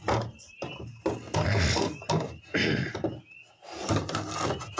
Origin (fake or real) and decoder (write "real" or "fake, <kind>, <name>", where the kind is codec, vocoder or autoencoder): real